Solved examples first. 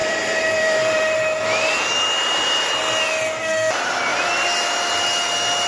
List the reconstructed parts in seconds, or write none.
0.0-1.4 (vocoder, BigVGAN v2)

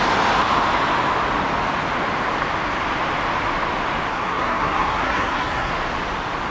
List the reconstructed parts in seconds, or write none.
4.1-5.7 (codec, SNAC)

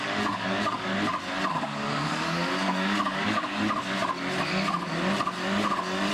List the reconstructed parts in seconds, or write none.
0.0-0.9 (codec, DAC); 1.5-3.5

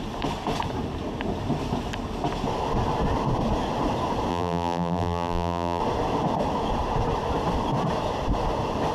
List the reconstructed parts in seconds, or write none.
4.3-5.8 (vocoder, BigVGAN v2)

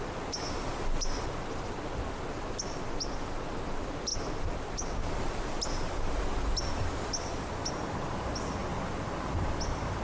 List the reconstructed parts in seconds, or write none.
none

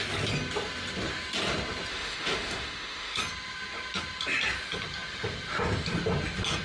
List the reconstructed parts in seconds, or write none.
1.9-3.2 (autoencoder, DAC-VAE)

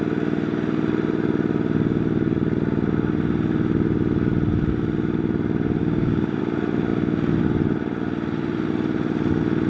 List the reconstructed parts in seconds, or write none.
5.8-6.4 (codec, DAC)

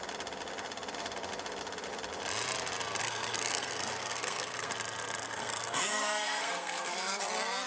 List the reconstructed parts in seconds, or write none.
3.0-4.7 (codec, SNAC); 5.2-7.2